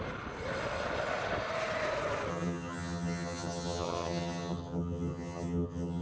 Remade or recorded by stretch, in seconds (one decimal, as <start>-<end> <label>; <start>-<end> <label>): 0.0-2.3 recorded; 2.3-6.0 remade